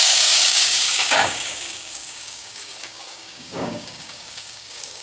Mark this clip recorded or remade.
remade